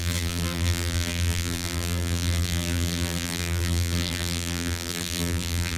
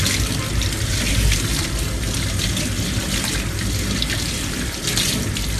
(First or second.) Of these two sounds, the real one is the second